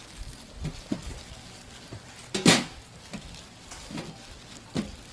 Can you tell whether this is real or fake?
real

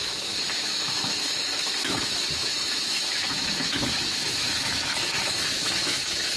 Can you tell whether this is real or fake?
fake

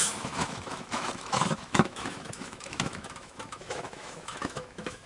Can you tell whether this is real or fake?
fake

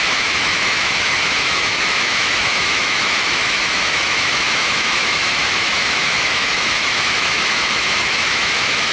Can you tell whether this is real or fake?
fake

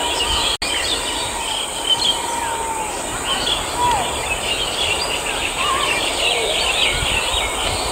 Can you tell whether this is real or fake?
real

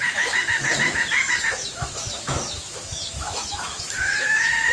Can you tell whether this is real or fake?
fake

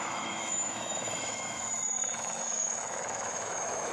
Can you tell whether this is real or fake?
fake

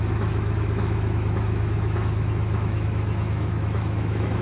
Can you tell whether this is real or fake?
fake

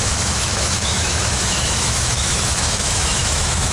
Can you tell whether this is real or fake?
fake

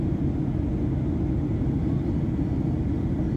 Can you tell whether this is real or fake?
real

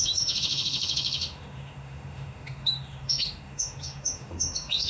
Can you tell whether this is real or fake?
fake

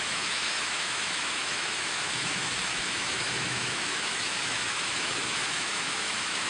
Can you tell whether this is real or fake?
fake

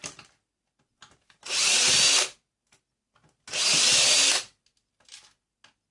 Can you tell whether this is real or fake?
real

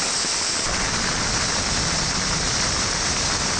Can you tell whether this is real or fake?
real